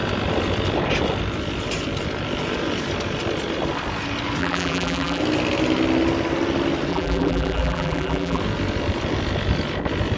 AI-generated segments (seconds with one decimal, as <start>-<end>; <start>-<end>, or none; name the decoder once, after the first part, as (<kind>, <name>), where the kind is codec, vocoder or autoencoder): 4.4-5.2 (vocoder, BigVGAN v2); 6.9-8.4